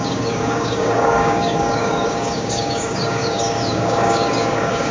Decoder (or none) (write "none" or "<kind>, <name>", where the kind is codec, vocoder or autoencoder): codec, DAC